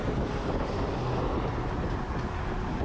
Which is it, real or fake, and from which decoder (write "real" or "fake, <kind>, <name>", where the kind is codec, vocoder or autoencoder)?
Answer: real